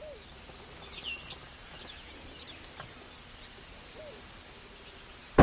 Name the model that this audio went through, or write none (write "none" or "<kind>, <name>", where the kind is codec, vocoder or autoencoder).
none